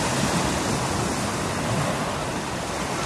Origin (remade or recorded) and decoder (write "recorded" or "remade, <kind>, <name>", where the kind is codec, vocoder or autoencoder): recorded